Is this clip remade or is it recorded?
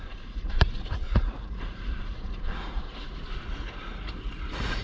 remade